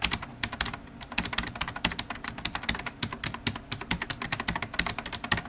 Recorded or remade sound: recorded